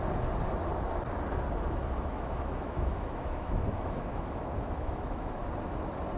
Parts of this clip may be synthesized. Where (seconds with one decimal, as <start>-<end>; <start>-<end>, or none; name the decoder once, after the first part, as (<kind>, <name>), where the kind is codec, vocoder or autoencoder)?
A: 1.8-5.4 (autoencoder, DAC-VAE)